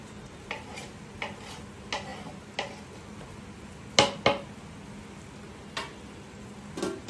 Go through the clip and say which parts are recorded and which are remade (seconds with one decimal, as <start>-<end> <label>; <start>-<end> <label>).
0.0-7.1 recorded